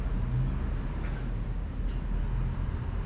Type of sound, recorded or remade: recorded